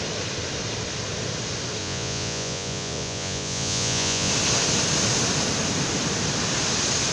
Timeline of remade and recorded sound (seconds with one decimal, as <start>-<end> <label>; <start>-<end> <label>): 0.0-1.8 recorded; 1.8-4.3 remade; 4.3-7.1 recorded